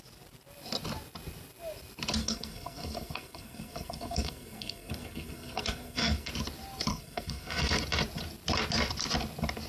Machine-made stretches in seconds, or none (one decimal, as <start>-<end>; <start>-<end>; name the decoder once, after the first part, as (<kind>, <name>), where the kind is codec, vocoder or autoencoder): 2.2-6.3 (codec, SNAC); 6.9-7.7